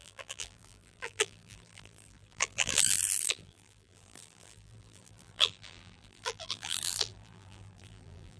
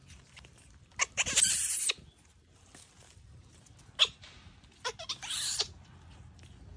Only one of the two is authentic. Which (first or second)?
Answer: second